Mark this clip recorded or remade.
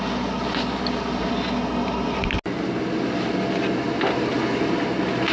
recorded